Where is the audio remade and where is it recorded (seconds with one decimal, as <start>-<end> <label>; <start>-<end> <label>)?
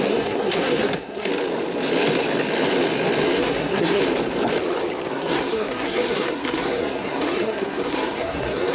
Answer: 0.0-1.3 remade; 1.3-3.4 recorded; 3.4-4.0 remade; 4.0-5.1 recorded; 5.1-8.7 remade